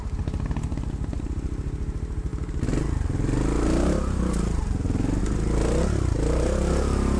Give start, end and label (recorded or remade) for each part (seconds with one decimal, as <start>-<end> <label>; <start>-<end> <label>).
0.0-7.2 recorded